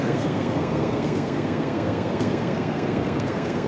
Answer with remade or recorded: remade